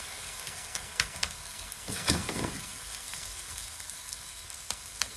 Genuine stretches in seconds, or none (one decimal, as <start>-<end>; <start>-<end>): none